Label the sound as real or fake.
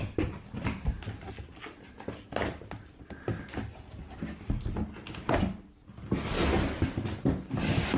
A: real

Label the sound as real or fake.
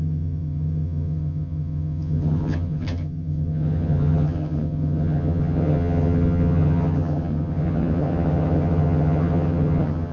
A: fake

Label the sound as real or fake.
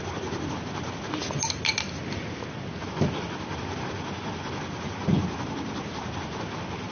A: real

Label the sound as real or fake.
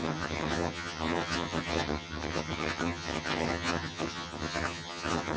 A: fake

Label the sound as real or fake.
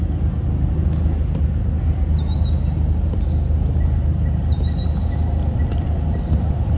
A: real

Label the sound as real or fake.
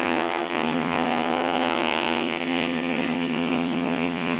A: fake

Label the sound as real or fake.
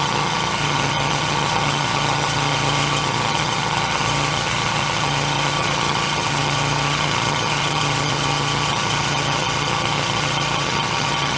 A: fake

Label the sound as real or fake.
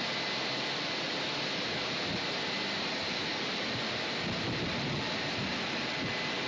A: real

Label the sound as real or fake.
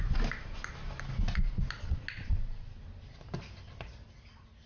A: real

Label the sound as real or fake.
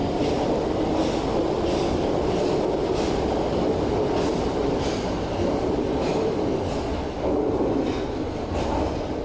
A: real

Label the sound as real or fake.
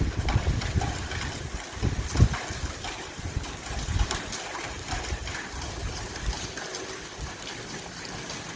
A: real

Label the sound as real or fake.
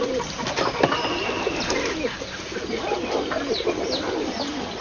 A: real